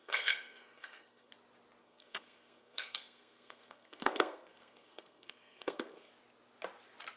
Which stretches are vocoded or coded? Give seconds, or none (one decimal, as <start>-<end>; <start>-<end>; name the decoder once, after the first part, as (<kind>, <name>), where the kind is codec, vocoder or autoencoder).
0.0-1.3 (codec, SNAC); 1.8-6.1